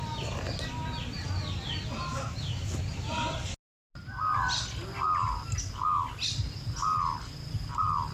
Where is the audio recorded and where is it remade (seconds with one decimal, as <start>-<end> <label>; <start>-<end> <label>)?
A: 0.0-2.1 recorded; 2.1-2.8 remade; 2.8-8.1 recorded